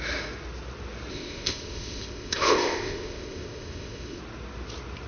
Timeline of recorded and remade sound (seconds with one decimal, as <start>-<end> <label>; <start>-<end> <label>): 0.0-1.1 recorded; 1.1-4.2 remade; 4.2-5.1 recorded